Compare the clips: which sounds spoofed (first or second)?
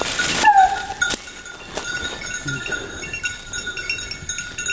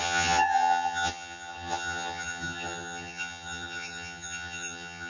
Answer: second